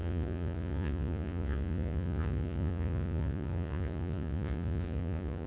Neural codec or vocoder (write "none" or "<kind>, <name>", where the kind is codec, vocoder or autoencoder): vocoder, Vocos